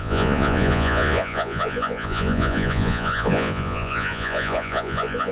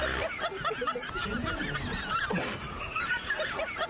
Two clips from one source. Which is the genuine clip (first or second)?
second